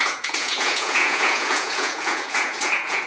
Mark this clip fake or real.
fake